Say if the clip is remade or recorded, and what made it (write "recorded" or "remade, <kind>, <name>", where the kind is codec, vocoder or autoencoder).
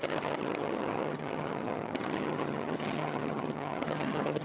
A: remade, vocoder, HiFi-GAN